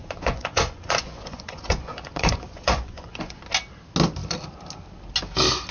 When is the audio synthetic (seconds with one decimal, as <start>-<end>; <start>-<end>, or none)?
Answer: 0.0-3.4